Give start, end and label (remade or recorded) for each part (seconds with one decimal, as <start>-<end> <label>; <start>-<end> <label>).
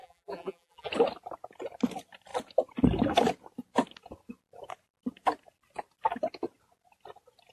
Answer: 0.0-0.9 remade; 0.9-7.5 recorded